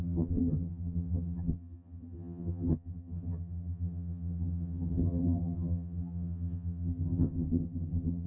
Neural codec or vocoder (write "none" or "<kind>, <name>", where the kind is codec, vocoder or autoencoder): vocoder, HiFi-GAN